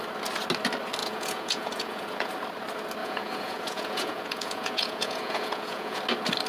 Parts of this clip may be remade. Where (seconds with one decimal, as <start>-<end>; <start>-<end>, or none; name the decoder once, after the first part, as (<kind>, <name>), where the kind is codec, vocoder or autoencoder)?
1.0-2.3 (vocoder, Vocos); 3.0-6.0